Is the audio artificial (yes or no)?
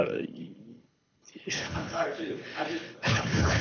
yes